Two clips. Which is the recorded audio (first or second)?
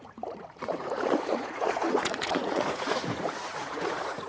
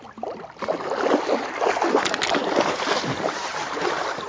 second